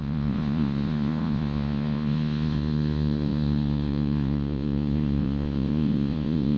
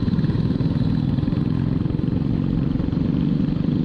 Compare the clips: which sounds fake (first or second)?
first